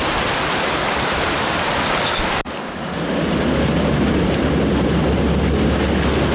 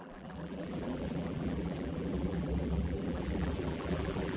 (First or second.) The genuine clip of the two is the first